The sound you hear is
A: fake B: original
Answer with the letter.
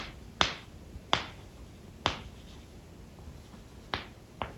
B